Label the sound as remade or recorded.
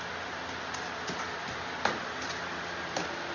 recorded